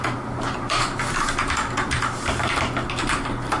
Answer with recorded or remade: recorded